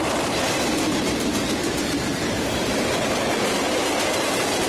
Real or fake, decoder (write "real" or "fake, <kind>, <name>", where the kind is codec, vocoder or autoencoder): real